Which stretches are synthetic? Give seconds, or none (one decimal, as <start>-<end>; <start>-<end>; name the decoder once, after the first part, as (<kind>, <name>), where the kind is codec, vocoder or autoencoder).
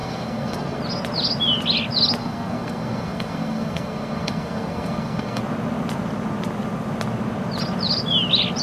0.0-0.8 (codec, SNAC); 2.2-5.4